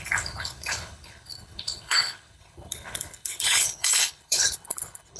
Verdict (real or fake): fake